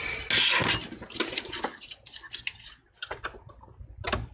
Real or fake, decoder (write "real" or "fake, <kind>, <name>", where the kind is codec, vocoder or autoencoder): real